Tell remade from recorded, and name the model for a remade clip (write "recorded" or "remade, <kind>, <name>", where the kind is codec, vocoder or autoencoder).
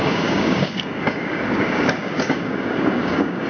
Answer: remade, codec, DAC